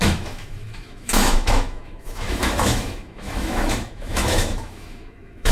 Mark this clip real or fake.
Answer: fake